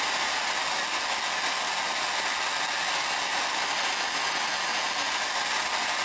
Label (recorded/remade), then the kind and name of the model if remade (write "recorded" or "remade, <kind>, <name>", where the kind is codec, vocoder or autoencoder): recorded